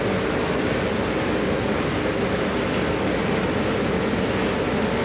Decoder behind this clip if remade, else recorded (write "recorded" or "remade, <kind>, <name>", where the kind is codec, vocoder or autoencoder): recorded